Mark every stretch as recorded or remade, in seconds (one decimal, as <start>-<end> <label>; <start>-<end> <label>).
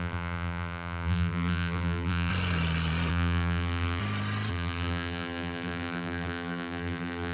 0.0-2.3 remade; 2.3-3.1 recorded; 3.1-4.0 remade; 4.0-4.5 recorded; 4.5-7.3 remade